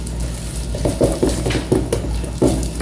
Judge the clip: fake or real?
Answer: real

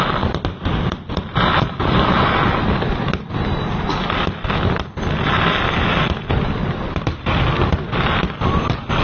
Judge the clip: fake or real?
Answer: real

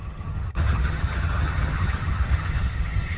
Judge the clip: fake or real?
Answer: fake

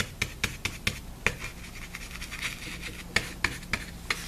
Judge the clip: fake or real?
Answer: real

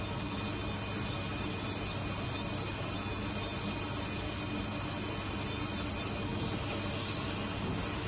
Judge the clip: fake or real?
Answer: real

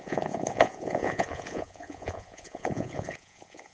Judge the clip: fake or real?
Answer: fake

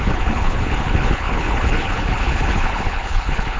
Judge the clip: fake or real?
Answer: fake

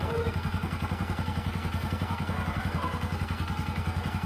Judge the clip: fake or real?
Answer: fake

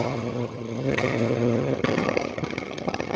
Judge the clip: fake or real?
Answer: fake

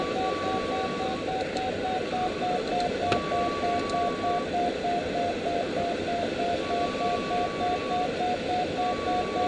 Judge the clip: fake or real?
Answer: real